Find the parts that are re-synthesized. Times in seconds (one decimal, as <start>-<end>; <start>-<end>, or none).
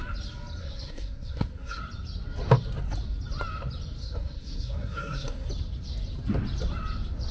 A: 0.6-1.8; 4.0-5.5